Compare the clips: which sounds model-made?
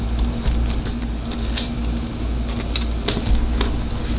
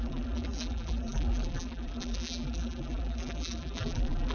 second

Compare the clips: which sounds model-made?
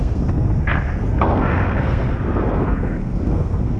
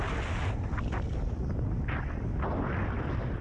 first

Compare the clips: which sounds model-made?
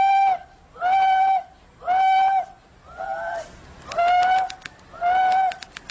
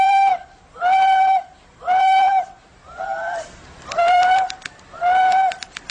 second